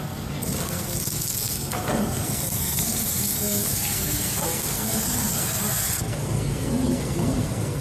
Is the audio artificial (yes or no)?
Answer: yes